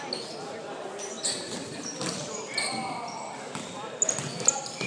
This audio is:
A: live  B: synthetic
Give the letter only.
A